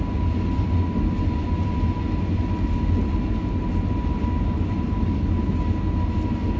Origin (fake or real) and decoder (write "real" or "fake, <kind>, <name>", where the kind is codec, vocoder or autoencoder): real